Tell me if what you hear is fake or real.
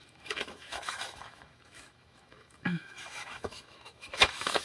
fake